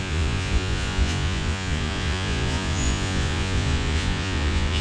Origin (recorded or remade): remade